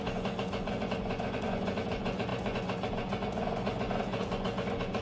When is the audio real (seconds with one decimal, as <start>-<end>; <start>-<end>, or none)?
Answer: none